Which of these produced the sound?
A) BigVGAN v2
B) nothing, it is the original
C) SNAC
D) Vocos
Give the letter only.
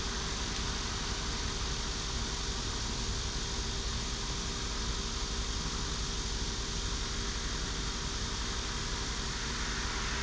B